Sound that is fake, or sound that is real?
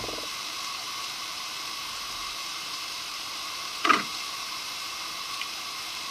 fake